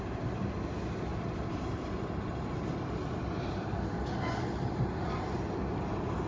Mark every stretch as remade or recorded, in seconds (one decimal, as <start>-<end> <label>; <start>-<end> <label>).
0.0-6.3 recorded